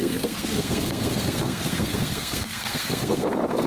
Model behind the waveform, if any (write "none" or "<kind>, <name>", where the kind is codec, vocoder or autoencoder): codec, SNAC